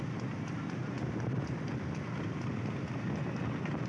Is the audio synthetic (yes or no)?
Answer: no